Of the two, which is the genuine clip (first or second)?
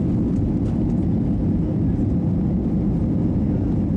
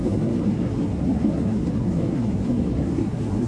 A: first